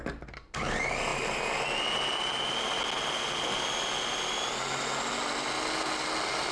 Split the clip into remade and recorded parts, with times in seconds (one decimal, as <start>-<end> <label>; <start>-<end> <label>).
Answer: 0.0-6.5 recorded